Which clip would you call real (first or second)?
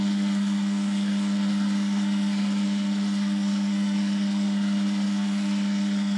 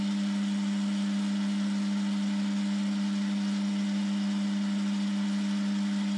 second